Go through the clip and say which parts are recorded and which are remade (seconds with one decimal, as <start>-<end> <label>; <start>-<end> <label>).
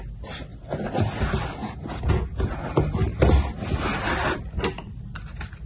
0.0-1.6 recorded; 1.6-2.6 remade; 2.6-5.7 recorded